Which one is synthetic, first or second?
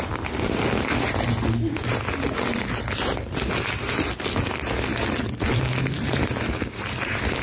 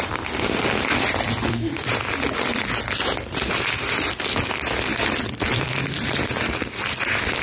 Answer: second